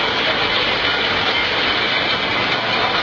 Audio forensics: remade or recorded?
recorded